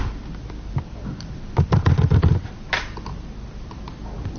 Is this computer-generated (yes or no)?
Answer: no